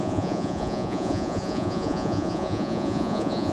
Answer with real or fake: fake